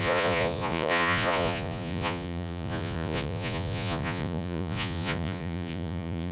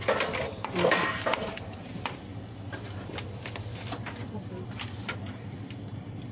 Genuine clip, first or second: second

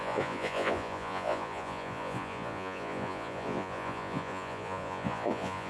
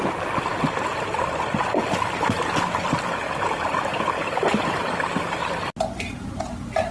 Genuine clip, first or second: second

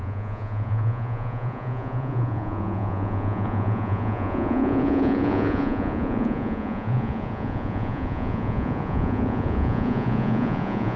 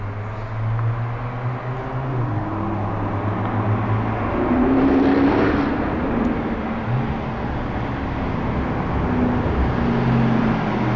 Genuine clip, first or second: second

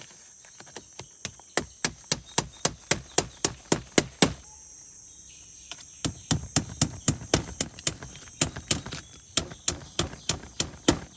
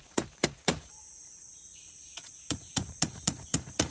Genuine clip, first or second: first